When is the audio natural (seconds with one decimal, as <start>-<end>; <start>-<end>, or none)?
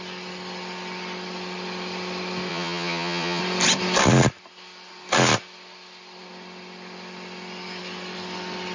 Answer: 0.0-2.5; 3.4-8.7